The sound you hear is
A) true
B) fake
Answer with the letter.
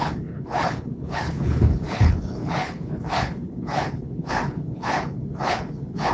B